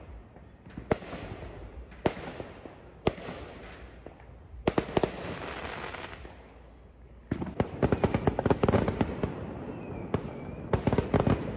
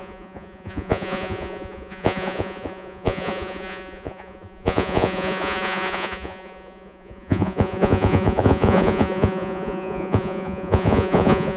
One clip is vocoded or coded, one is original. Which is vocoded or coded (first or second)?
second